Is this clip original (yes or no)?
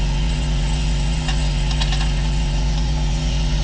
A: no